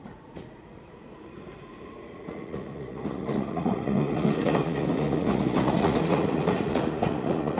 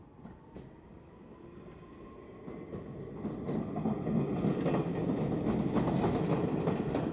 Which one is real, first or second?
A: second